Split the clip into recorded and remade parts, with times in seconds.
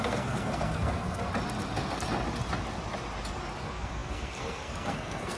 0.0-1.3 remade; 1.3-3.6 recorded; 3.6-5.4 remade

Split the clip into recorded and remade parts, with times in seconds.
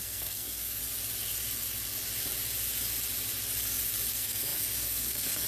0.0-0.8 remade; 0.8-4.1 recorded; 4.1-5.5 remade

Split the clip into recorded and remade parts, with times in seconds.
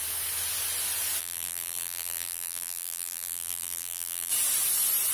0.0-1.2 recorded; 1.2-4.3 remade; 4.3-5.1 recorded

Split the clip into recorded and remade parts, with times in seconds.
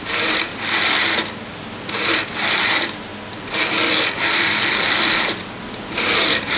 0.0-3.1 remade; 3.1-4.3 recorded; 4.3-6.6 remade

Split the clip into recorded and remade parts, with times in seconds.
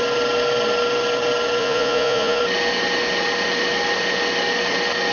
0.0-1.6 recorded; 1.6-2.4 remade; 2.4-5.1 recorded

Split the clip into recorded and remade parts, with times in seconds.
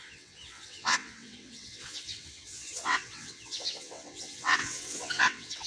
0.0-5.7 remade